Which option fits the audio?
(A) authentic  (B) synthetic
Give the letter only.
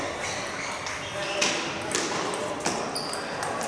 A